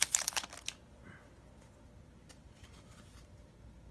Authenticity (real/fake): real